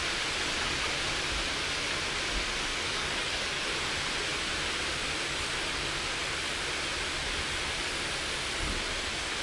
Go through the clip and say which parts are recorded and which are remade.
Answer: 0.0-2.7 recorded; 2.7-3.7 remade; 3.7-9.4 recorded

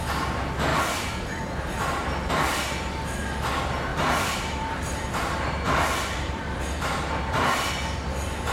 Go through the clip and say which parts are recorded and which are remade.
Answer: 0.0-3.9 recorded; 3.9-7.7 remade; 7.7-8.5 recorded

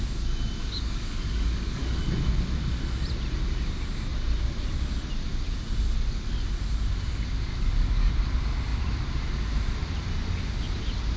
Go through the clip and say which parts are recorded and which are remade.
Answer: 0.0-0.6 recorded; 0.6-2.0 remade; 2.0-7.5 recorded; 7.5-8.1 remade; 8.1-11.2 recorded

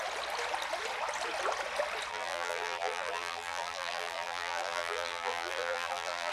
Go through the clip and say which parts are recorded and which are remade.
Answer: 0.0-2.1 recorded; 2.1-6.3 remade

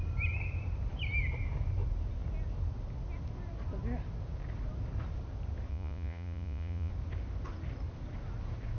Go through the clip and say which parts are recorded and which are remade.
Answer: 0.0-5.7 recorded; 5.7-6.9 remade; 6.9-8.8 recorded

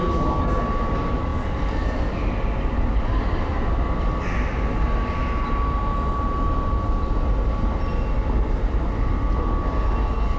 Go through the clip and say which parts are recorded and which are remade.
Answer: 0.0-10.4 recorded

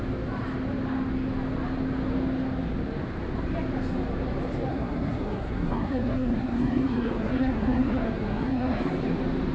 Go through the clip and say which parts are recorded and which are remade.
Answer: 0.0-4.7 recorded; 4.7-8.9 remade; 8.9-9.5 recorded